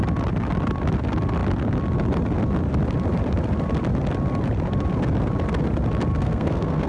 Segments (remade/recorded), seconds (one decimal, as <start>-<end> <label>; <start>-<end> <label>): 0.0-6.1 recorded; 6.1-6.9 remade